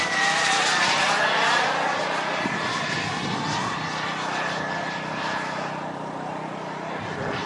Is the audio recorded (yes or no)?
no